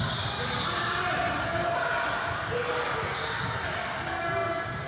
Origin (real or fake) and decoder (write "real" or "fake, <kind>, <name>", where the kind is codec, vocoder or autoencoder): real